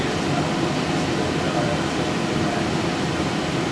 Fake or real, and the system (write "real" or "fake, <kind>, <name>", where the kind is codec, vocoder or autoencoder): real